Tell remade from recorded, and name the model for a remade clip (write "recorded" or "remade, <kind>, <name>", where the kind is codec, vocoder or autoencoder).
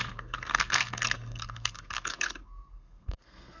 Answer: remade, codec, SNAC